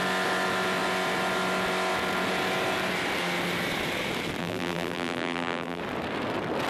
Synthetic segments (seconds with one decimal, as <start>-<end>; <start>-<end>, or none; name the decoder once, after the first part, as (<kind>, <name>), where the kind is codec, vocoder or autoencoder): 4.4-5.8 (vocoder, BigVGAN v2)